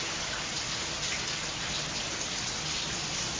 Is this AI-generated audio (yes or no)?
no